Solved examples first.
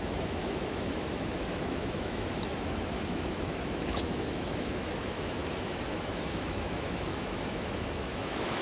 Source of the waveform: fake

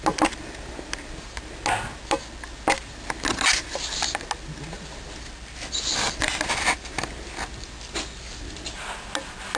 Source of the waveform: real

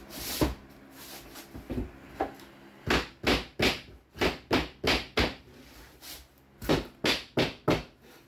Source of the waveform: real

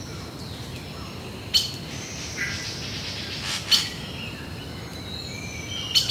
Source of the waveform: real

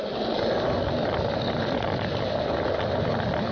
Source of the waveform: real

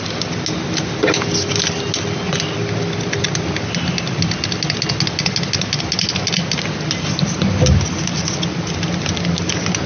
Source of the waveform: real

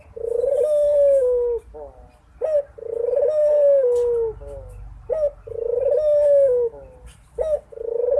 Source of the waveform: real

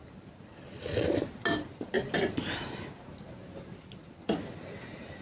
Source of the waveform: real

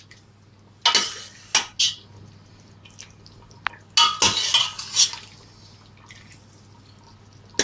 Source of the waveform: real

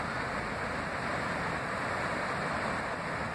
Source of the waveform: real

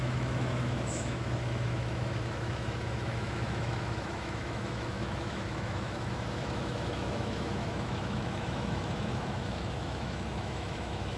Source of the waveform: fake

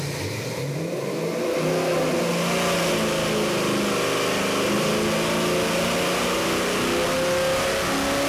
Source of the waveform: real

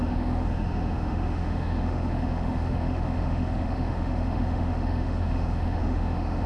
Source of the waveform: fake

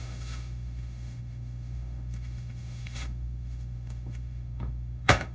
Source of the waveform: fake